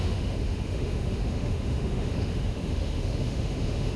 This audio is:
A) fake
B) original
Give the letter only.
A